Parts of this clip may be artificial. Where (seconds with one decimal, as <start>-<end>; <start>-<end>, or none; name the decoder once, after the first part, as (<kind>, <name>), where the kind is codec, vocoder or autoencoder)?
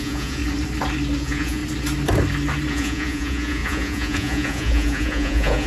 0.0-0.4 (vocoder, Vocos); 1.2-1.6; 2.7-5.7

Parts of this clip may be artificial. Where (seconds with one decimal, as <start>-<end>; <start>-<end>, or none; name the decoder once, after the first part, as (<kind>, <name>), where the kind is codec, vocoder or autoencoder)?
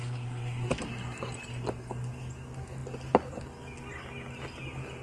0.0-0.7 (codec, SNAC)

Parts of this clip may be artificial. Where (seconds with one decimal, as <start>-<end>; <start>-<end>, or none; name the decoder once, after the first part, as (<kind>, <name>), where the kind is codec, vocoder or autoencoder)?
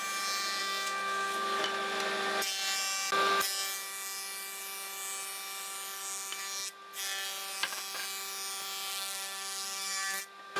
0.6-1.6 (codec, SNAC); 8.9-10.2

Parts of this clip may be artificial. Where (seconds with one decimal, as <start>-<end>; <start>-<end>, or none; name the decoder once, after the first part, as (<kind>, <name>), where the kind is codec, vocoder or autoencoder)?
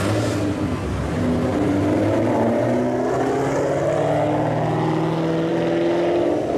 none